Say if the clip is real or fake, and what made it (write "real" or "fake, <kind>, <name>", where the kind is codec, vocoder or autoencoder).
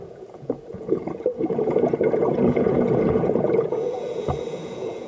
fake, vocoder, Vocos